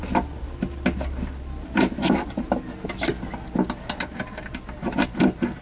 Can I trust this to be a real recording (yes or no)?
yes